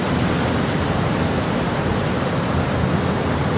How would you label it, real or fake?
real